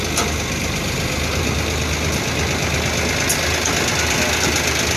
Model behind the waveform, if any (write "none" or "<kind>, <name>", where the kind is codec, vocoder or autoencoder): none